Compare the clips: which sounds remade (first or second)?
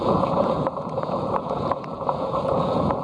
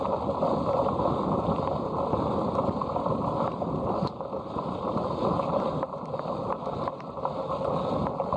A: first